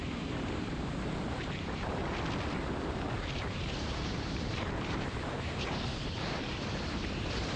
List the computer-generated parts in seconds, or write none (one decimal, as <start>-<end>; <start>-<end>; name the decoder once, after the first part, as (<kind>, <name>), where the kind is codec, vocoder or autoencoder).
0.0-2.0 (vocoder, BigVGAN v2); 2.8-7.6